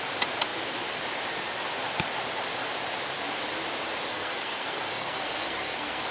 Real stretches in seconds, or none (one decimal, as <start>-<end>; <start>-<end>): 0.0-4.1